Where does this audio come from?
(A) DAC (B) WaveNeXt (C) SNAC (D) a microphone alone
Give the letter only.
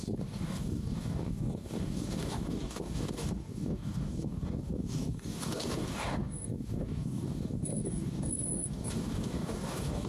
A